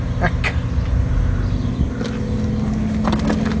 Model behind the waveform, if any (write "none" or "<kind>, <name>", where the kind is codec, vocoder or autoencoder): none